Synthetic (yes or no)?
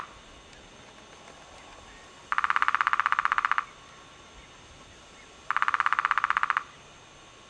no